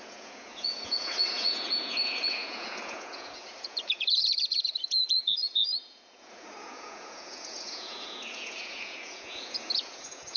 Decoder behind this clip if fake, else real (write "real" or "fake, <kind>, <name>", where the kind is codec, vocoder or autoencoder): fake, vocoder, Vocos